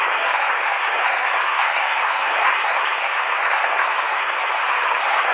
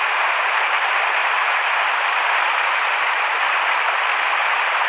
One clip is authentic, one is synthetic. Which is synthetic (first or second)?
first